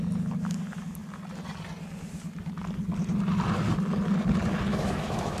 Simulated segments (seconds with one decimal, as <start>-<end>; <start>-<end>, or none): 4.7-5.4